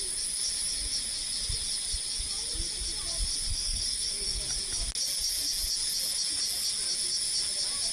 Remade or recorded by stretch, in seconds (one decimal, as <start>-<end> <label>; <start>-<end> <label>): 0.0-3.5 recorded; 3.5-4.4 remade; 4.4-7.9 recorded